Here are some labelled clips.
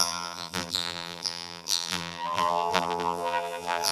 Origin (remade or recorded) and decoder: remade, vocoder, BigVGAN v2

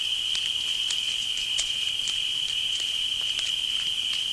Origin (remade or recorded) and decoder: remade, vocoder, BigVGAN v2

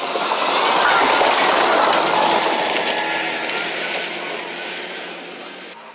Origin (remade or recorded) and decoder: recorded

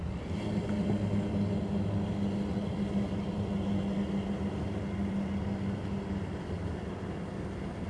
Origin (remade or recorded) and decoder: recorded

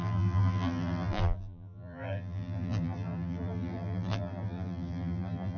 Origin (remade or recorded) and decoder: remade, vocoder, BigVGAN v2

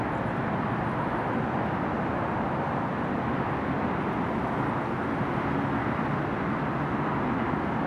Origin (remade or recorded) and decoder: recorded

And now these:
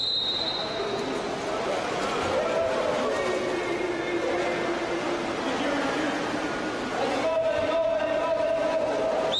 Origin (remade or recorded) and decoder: recorded